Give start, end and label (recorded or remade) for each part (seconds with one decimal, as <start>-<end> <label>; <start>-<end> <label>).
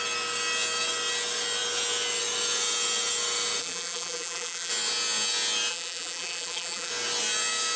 0.0-3.6 recorded; 3.6-4.7 remade; 4.7-5.7 recorded; 5.7-6.9 remade; 6.9-7.8 recorded